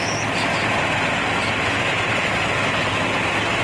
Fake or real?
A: real